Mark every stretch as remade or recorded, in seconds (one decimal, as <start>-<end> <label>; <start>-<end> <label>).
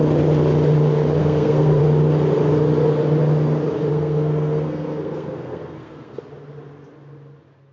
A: 0.0-1.2 recorded; 1.2-1.8 remade; 1.8-3.9 recorded; 3.9-6.2 remade; 6.2-7.7 recorded